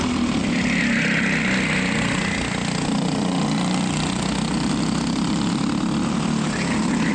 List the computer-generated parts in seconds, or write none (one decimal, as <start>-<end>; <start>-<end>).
none